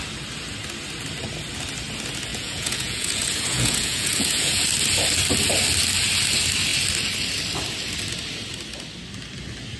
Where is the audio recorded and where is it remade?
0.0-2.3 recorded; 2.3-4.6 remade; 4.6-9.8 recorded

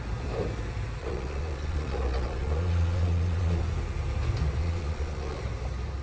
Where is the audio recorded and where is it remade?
0.0-1.0 recorded; 1.0-3.6 remade; 3.6-4.6 recorded; 4.6-5.4 remade; 5.4-6.0 recorded

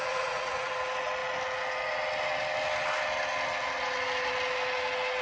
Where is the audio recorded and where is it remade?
0.0-0.7 remade; 0.7-5.2 recorded

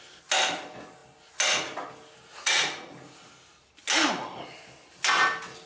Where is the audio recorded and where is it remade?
0.0-2.3 recorded; 2.3-2.9 remade; 2.9-5.7 recorded

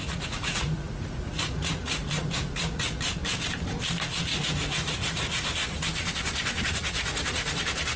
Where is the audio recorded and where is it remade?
0.0-3.0 remade; 3.0-4.3 recorded; 4.3-5.4 remade; 5.4-6.8 recorded; 6.8-7.6 remade; 7.6-8.0 recorded

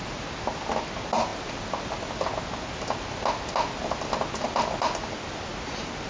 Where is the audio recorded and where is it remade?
0.0-6.1 recorded